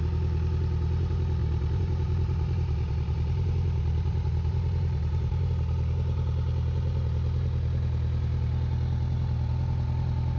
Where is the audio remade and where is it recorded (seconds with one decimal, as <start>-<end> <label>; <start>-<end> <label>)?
0.0-1.4 recorded; 1.4-5.5 remade; 5.5-10.4 recorded